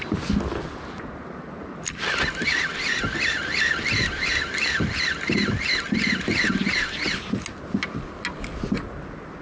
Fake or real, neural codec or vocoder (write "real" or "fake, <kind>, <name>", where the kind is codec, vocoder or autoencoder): real